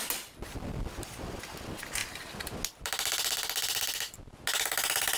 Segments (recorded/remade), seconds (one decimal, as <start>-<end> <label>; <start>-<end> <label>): 0.0-5.2 recorded